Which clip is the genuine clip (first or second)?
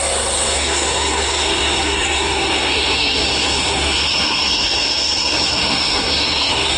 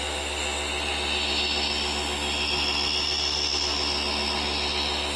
second